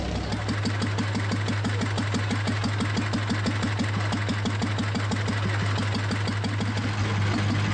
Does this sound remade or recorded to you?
recorded